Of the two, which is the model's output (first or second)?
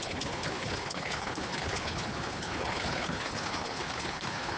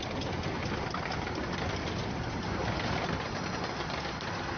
first